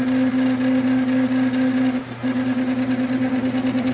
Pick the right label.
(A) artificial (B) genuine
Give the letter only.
B